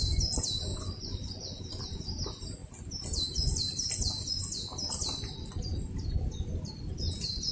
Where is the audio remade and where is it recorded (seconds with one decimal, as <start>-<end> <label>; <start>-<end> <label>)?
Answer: 0.0-0.7 recorded; 0.7-1.8 remade; 1.8-7.5 recorded